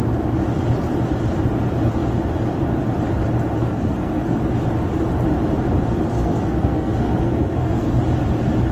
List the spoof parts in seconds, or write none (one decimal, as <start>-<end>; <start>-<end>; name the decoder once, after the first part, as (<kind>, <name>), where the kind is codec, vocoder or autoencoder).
3.6-4.4 (codec, SNAC); 6.1-8.0